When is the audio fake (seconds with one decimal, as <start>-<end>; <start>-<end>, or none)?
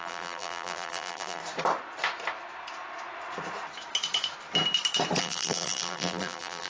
0.0-1.4; 5.2-6.7